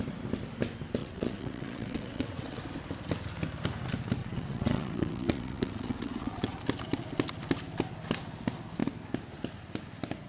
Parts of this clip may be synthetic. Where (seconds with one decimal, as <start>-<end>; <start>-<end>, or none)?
1.0-2.6; 4.2-6.6